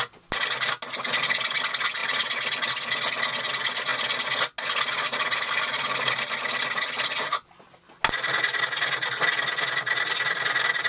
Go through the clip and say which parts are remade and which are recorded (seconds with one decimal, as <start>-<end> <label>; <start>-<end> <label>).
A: 0.0-2.0 recorded; 2.0-2.7 remade; 2.7-10.9 recorded